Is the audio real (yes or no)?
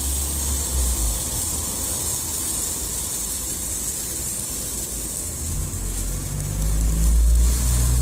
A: yes